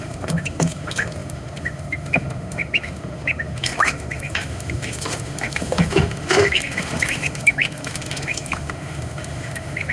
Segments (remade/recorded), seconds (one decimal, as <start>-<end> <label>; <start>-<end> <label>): 0.0-9.9 remade